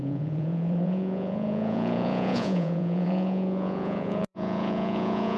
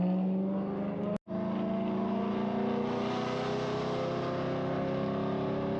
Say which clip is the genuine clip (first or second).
second